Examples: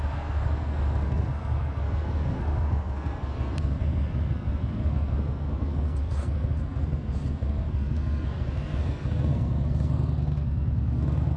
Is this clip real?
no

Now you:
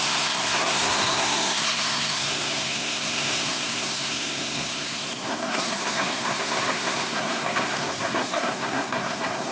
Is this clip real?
no